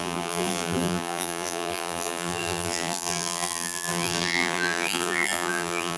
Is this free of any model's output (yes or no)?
no